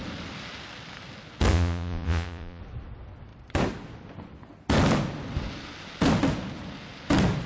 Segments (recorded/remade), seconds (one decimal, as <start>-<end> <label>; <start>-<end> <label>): 0.0-1.5 recorded; 1.5-2.6 remade; 2.6-7.5 recorded